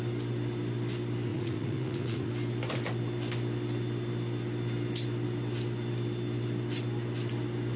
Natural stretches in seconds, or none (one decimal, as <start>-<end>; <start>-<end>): 0.0-1.3; 2.3-7.8